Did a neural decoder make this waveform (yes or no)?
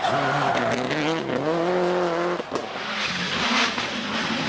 no